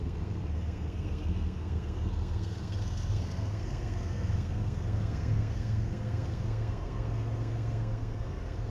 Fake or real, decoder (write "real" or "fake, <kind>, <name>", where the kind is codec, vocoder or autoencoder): fake, codec, SNAC